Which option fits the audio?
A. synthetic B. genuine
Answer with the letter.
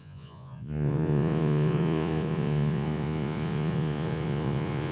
A